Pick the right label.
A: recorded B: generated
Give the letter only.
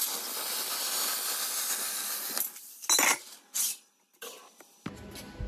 A